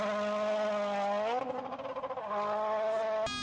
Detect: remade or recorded recorded